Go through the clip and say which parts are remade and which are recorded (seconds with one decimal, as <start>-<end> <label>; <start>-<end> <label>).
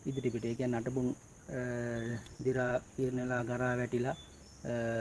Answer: 0.0-2.1 recorded; 2.1-3.4 remade; 3.4-5.0 recorded